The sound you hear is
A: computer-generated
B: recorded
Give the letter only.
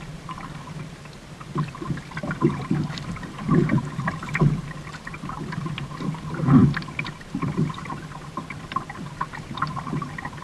A